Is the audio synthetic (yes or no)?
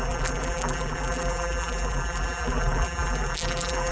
yes